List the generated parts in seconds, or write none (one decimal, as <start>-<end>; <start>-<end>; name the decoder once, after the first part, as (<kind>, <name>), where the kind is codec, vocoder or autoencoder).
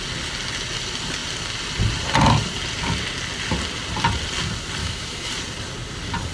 4.8-5.3 (autoencoder, DAC-VAE)